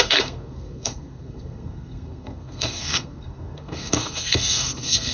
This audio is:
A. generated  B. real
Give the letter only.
A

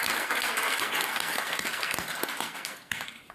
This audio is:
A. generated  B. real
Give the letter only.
A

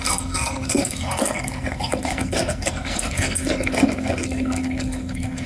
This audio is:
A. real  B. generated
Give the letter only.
B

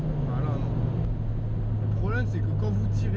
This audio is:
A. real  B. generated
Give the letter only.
A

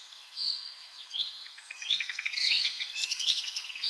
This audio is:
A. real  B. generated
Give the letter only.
B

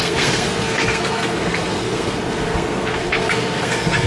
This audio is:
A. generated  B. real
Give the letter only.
A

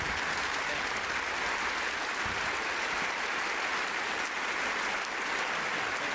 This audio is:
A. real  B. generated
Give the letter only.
A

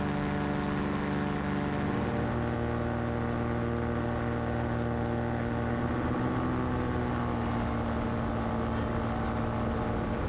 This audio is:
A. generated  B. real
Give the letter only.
B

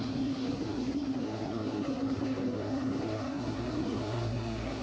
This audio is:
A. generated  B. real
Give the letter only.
A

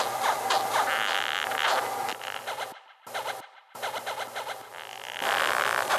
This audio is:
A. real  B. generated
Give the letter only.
A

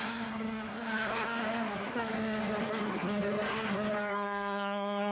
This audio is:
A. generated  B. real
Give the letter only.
A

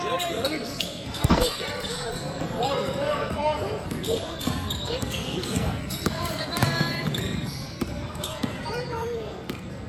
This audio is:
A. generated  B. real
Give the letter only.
A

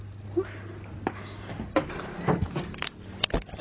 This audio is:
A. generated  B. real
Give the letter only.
B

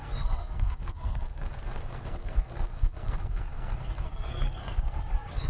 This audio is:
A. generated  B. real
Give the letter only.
A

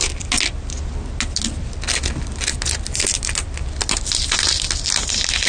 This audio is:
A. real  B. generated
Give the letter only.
A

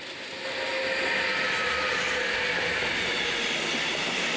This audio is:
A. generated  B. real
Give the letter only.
B